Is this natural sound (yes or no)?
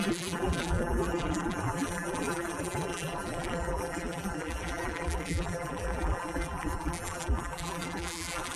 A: no